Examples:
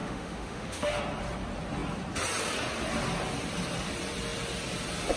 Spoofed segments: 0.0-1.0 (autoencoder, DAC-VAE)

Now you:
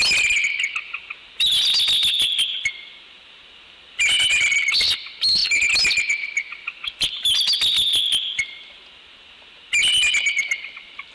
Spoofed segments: none